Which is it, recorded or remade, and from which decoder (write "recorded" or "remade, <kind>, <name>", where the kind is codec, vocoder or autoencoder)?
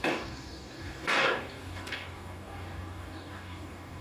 remade, codec, DAC